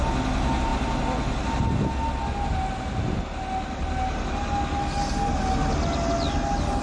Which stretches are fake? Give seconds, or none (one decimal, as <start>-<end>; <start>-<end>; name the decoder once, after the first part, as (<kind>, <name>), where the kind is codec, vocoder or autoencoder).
none